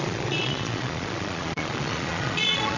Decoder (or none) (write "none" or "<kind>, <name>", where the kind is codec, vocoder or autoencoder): vocoder, Vocos